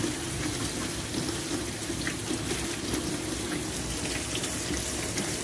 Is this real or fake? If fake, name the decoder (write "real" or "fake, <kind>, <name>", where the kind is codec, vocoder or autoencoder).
real